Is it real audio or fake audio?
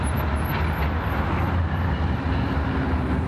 real